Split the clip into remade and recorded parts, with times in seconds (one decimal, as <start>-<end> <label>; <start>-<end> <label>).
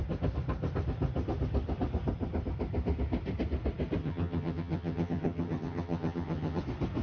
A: 0.0-4.0 recorded; 4.0-6.6 remade; 6.6-7.0 recorded